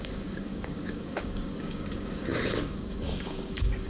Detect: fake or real fake